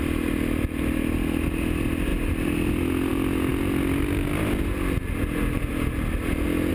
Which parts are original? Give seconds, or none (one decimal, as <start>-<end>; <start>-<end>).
0.0-6.7